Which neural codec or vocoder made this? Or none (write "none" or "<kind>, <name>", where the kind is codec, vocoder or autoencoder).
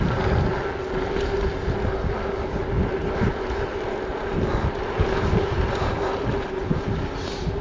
none